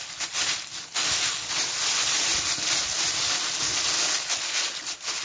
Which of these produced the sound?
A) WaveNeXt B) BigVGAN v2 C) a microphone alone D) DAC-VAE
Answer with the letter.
C